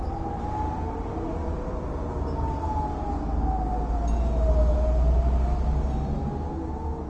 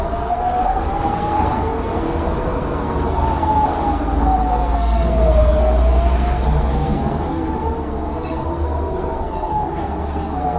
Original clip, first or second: first